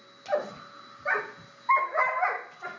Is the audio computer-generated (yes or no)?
no